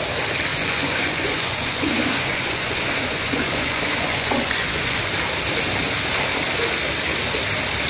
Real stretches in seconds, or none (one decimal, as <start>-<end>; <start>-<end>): 0.0-0.5; 5.1-7.9